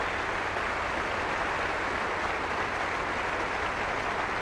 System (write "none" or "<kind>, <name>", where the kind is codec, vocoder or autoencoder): none